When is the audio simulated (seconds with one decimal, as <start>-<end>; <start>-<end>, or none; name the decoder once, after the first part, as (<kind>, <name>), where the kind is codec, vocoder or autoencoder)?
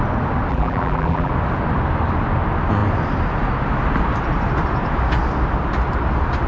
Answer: 0.5-1.3 (vocoder, BigVGAN v2)